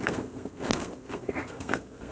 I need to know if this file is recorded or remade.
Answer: remade